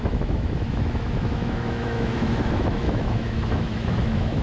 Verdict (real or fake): fake